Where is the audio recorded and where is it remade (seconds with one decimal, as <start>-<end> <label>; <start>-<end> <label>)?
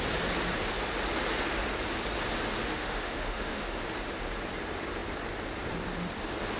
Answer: 0.0-2.6 recorded; 2.6-3.8 remade; 3.8-6.6 recorded